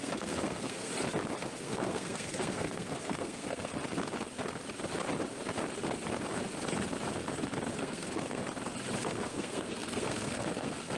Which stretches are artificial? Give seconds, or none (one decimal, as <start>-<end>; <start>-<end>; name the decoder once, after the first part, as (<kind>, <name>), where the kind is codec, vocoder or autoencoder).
0.0-0.9 (codec, SNAC); 1.6-3.7; 7.7-8.4; 9.0-11.0